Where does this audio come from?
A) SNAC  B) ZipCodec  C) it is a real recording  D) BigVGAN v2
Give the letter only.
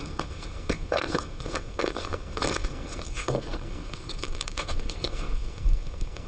A